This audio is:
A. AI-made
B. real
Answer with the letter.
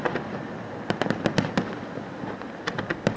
B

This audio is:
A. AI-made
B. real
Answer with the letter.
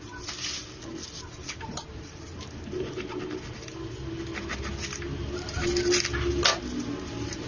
B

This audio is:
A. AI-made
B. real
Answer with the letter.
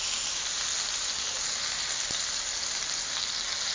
B